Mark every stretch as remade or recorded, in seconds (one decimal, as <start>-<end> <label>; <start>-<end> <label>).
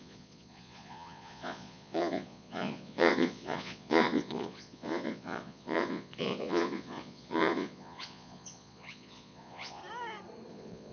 0.0-9.8 remade; 9.8-10.5 recorded; 10.5-10.9 remade